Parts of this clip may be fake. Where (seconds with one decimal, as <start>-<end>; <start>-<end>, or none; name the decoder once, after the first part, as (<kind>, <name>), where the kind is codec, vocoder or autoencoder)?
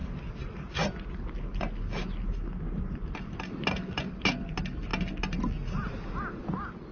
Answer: none